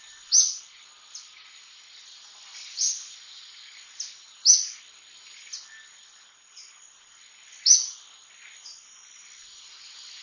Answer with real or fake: real